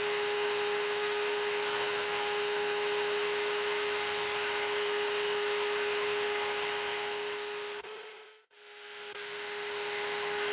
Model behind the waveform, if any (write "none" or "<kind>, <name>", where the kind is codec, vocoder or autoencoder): autoencoder, DAC-VAE